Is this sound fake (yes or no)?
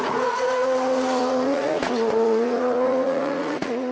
yes